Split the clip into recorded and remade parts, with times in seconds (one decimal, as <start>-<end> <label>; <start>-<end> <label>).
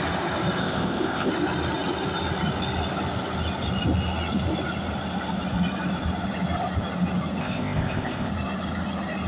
0.0-0.6 recorded; 0.6-1.3 remade; 1.3-7.4 recorded; 7.4-8.3 remade; 8.3-9.3 recorded